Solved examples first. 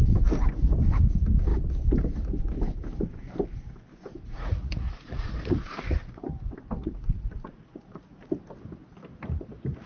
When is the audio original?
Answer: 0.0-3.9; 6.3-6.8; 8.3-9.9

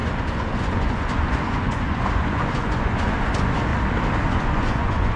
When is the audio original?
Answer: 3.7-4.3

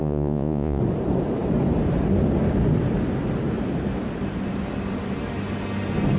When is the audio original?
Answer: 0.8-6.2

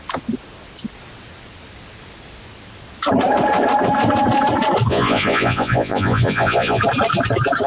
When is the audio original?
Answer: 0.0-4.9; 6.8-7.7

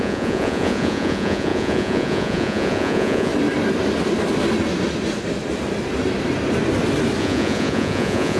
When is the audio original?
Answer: 3.3-7.2

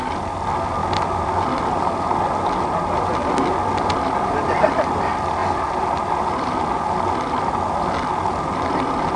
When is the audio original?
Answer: 0.0-9.2

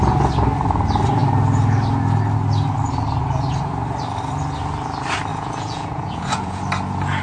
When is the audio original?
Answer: 0.0-5.3; 6.6-7.2